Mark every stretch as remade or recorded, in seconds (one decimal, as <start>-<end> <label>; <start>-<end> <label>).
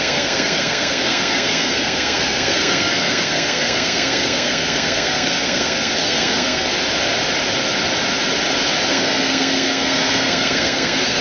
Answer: 0.0-6.7 remade; 6.7-8.9 recorded; 8.9-11.2 remade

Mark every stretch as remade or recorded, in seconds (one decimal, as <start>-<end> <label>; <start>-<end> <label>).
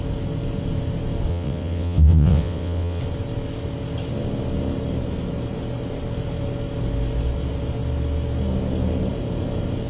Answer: 0.0-1.3 recorded; 1.3-3.0 remade; 3.0-9.9 recorded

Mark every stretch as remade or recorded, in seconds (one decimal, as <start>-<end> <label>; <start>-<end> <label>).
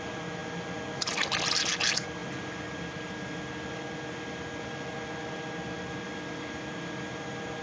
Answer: 0.0-7.6 recorded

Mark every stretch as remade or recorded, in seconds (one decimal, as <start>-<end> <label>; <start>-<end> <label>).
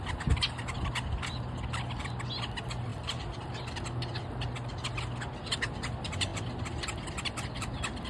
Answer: 0.0-2.9 recorded; 2.9-3.8 remade; 3.8-8.1 recorded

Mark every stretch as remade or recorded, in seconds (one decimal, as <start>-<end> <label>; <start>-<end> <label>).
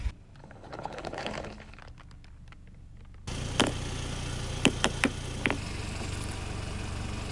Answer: 0.0-0.4 recorded; 0.4-1.8 remade; 1.8-7.3 recorded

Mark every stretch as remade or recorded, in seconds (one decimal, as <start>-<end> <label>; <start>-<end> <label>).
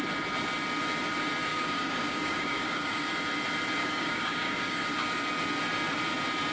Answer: 0.0-1.5 recorded; 1.5-3.1 remade; 3.1-3.8 recorded; 3.8-4.8 remade; 4.8-6.5 recorded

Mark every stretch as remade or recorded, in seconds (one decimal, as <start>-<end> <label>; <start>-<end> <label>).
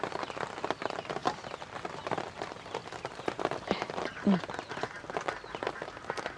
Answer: 0.0-2.8 recorded; 2.8-4.2 remade; 4.2-6.4 recorded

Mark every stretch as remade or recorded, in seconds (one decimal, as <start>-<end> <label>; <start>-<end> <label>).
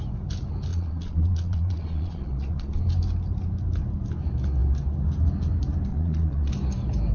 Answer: 0.0-0.7 recorded; 0.7-2.8 remade; 2.8-5.9 recorded; 5.9-6.5 remade; 6.5-7.1 recorded